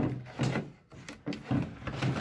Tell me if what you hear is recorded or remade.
recorded